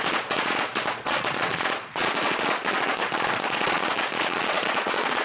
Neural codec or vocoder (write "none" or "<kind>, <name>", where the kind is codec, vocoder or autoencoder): vocoder, Vocos